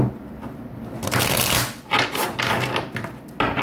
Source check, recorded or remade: recorded